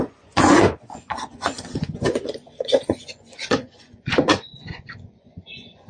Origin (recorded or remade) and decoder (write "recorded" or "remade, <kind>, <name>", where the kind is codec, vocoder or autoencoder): remade, vocoder, Vocos